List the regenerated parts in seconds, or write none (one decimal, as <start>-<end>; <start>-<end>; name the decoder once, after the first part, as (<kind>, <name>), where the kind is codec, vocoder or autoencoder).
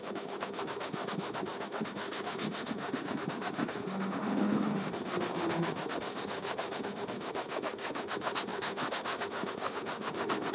0.0-10.5 (autoencoder, DAC-VAE)